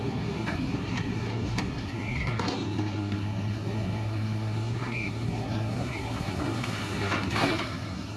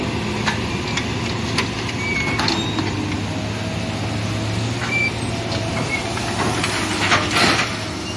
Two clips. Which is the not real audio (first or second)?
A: first